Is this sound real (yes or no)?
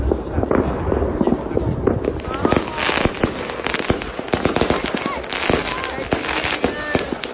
yes